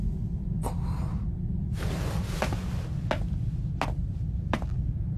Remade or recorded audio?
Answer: recorded